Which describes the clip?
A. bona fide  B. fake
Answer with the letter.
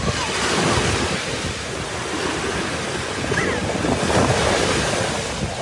A